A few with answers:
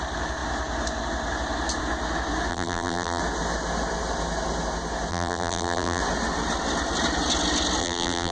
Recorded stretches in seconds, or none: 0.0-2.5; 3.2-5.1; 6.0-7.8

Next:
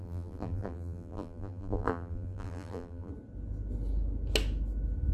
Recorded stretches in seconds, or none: 3.1-5.1

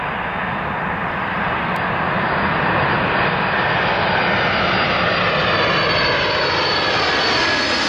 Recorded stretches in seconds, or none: 0.0-1.0; 4.3-7.9

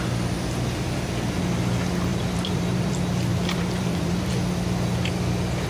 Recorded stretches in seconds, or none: 0.0-2.1; 2.9-3.3; 4.3-5.7

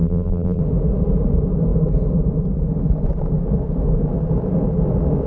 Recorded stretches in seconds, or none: 0.6-5.3

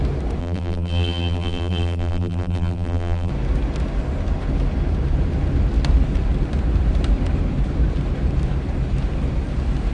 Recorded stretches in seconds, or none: 0.0-0.4; 3.3-9.9

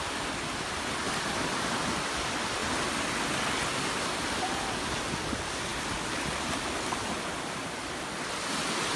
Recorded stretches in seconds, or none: 0.0-9.0